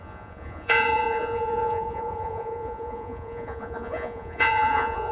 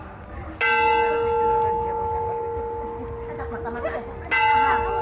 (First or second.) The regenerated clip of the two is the first